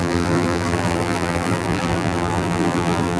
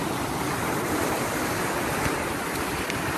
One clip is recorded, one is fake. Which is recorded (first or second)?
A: second